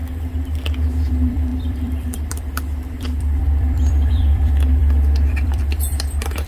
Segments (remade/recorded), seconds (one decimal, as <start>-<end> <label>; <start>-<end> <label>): 0.0-1.1 recorded; 1.1-6.5 remade